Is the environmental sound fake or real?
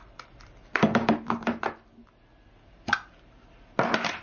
real